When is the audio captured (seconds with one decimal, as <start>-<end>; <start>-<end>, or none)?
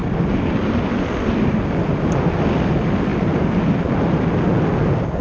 1.0-3.1; 4.2-5.2